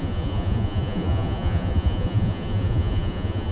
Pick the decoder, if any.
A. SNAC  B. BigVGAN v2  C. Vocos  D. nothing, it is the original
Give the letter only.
C